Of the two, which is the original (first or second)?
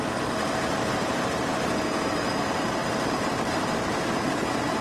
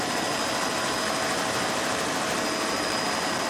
second